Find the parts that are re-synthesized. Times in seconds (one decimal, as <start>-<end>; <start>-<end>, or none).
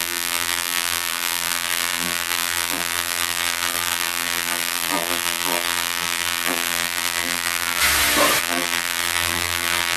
0.0-7.8; 8.4-10.0